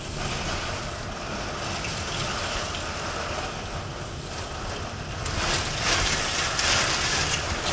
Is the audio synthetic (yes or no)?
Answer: no